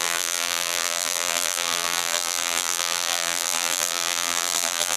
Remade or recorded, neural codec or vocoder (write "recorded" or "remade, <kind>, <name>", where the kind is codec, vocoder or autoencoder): remade, vocoder, BigVGAN v2